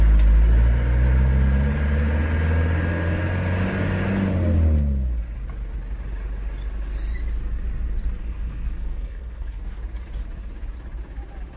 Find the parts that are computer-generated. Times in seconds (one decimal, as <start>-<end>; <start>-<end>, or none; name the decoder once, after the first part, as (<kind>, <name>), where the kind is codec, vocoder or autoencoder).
8.2-9.6 (codec, SNAC)